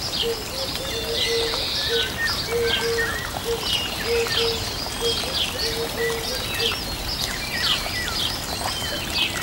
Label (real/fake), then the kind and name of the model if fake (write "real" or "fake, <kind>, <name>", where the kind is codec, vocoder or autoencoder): real